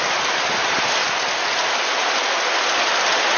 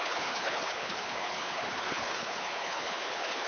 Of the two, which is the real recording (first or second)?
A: first